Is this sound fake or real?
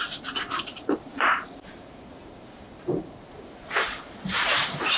fake